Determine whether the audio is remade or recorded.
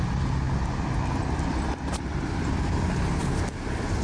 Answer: recorded